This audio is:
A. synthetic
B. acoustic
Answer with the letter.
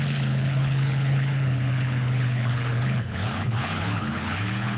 A